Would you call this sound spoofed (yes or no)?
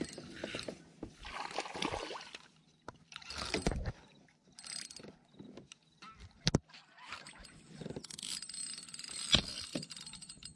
no